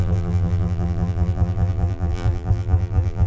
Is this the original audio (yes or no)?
no